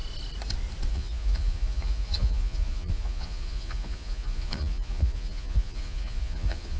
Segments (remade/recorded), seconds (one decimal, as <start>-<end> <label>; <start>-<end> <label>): 0.0-0.9 recorded; 0.9-6.8 remade